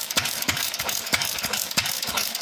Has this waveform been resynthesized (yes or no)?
yes